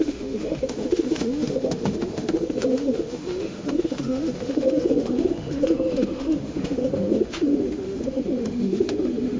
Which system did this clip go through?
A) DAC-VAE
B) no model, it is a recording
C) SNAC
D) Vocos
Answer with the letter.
A